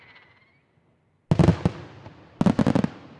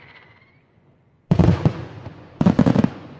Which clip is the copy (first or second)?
second